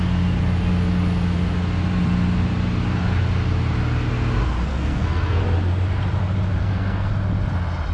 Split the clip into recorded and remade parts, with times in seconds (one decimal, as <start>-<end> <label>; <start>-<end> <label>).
0.0-4.7 recorded; 4.7-5.4 remade; 5.4-6.6 recorded; 6.6-7.1 remade; 7.1-7.9 recorded